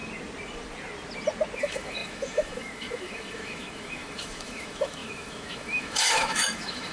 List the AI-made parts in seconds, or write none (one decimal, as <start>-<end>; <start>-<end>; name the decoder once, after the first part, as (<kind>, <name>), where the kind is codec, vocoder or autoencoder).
1.6-6.9 (autoencoder, DAC-VAE)